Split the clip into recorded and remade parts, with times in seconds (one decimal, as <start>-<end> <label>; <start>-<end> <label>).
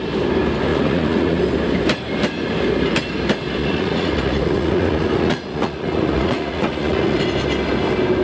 0.0-0.7 recorded; 0.7-1.4 remade; 1.4-3.6 recorded; 3.6-7.2 remade; 7.2-8.2 recorded